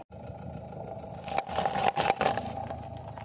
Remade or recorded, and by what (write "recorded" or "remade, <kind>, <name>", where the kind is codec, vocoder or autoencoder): recorded